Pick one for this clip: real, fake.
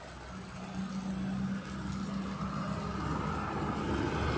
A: real